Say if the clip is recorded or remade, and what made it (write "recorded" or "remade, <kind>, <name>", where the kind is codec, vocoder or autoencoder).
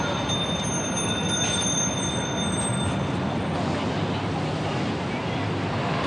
recorded